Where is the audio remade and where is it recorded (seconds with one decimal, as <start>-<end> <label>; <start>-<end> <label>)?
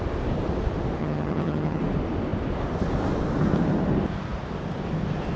0.0-1.0 recorded; 1.0-1.8 remade; 1.8-5.4 recorded